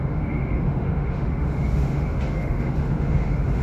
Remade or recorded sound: remade